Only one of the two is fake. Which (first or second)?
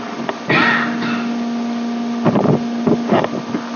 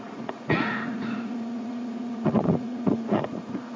second